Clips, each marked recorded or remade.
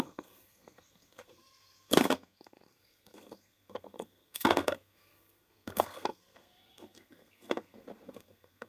remade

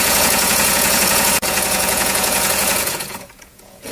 remade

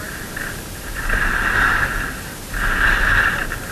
recorded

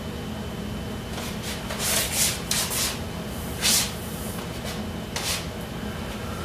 recorded